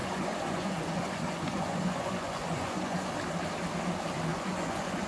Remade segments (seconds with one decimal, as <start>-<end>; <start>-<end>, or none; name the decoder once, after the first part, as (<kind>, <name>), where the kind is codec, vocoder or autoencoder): 0.0-3.1 (vocoder, Vocos); 4.3-5.1